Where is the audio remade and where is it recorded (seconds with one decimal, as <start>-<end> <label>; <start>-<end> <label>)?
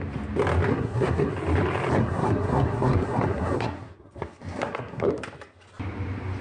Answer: 0.0-0.7 recorded; 0.7-1.3 remade; 1.3-2.0 recorded; 2.0-5.1 remade; 5.1-6.4 recorded